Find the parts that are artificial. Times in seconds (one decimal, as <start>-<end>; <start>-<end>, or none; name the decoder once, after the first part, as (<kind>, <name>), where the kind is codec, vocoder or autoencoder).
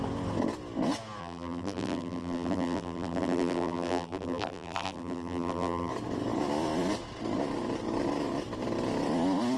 1.2-5.9 (vocoder, BigVGAN v2)